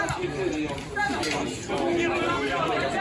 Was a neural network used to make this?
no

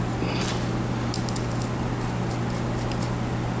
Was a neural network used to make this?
no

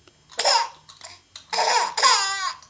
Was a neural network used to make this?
no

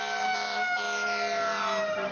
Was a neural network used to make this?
no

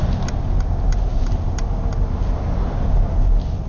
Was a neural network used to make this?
no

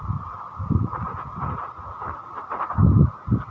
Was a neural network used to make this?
no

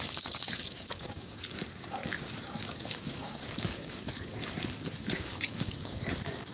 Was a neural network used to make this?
yes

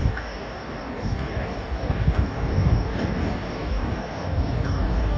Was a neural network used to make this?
yes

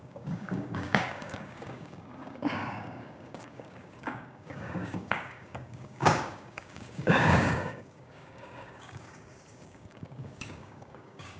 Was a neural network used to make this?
yes